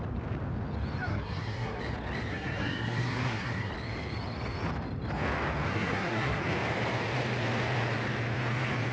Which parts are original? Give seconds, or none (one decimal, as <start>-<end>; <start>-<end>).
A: 0.0-1.1; 1.8-2.3; 3.7-5.7; 6.4-8.9

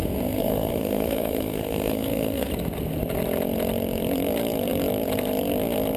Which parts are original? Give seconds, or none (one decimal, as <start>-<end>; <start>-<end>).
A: 2.5-6.0

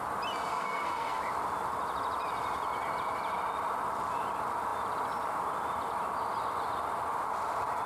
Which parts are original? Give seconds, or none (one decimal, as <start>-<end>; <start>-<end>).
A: 0.0-0.5; 1.2-7.9

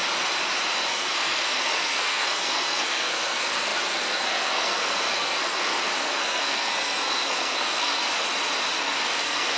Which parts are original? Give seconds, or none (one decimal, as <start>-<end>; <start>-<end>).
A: 0.0-0.9; 8.2-8.8

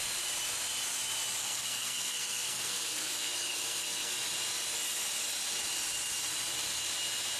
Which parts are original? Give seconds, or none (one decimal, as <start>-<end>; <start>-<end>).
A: 0.0-1.4; 4.1-7.4

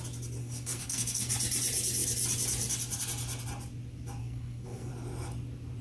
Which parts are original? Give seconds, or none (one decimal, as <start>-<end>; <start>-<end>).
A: 0.0-0.4; 1.3-4.2; 4.9-5.8

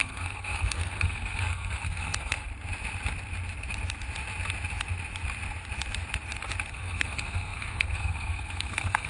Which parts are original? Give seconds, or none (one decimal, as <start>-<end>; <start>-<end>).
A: 2.5-6.7